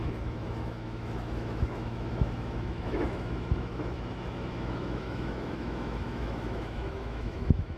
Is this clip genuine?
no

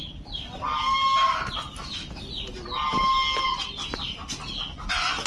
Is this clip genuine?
yes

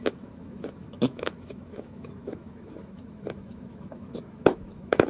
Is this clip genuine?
no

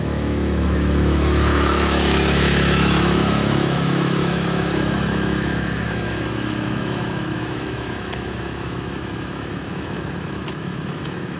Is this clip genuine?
no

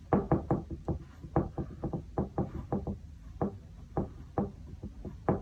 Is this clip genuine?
yes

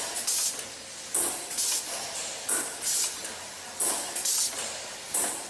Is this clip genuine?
yes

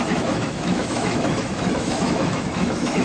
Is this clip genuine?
no